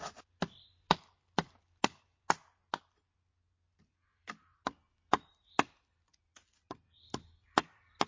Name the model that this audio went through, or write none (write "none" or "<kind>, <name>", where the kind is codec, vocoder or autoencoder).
none